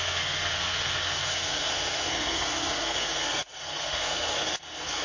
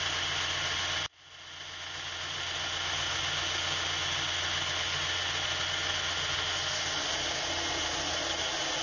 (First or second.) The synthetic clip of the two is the first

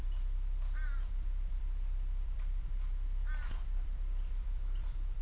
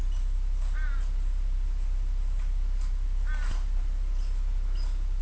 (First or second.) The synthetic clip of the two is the first